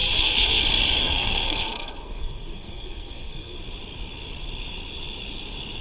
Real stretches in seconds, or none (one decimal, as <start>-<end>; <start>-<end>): 0.6-1.0; 3.6-5.8